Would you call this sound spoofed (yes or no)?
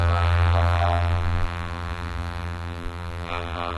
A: yes